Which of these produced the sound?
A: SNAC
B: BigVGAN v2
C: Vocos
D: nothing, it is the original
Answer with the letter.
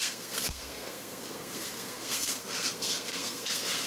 A